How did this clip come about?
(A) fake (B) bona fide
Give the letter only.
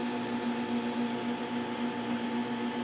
B